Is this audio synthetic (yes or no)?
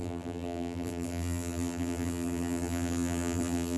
yes